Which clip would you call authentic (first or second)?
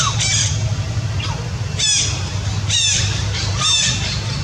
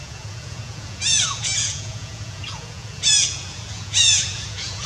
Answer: first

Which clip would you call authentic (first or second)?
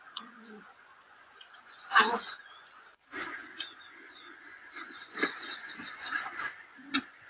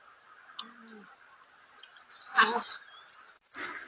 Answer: second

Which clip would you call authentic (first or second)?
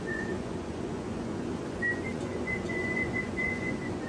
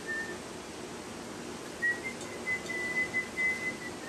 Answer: second